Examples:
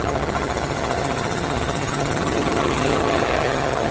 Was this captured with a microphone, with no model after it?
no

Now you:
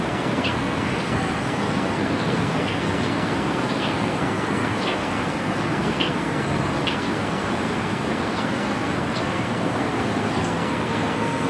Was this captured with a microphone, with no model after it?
no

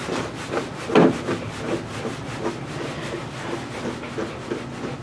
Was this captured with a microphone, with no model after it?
yes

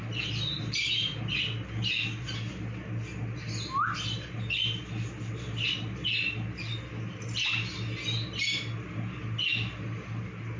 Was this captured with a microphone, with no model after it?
yes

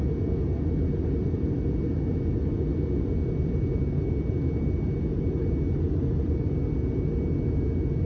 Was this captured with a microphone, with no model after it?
yes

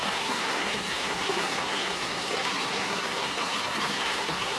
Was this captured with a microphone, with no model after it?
no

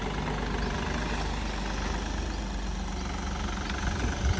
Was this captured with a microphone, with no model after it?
yes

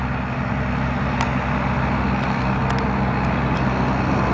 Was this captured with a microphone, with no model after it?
yes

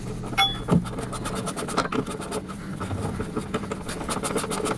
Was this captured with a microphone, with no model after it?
yes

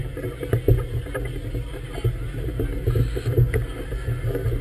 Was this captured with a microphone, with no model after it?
yes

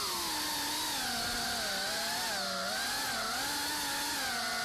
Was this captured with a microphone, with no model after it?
yes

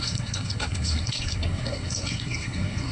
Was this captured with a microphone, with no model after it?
no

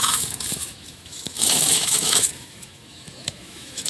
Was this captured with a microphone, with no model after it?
no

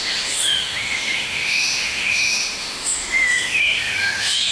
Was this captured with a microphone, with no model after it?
no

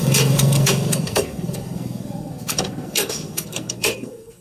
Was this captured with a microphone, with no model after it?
no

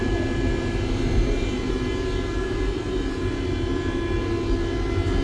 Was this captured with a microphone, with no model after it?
yes